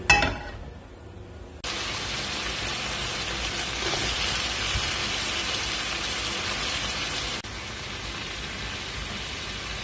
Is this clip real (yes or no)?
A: yes